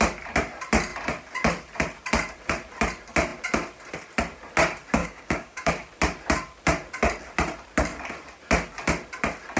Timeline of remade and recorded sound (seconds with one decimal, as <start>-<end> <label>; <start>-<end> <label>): 0.0-5.0 recorded; 5.0-5.7 remade; 5.7-9.6 recorded